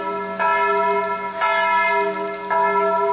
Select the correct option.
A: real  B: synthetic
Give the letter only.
A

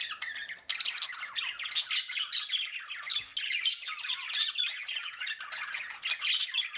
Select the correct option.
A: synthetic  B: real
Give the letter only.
B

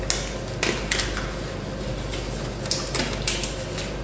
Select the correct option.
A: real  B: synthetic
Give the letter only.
A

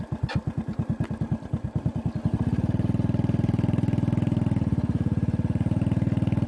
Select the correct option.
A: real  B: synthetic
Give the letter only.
A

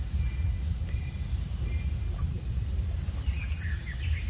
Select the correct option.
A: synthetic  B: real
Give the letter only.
B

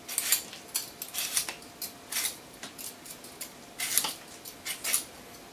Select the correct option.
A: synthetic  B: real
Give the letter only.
B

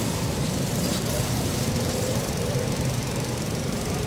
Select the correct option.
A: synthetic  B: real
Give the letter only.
A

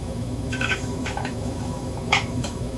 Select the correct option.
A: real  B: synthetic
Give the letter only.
B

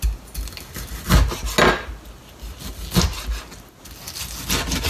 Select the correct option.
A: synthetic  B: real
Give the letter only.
B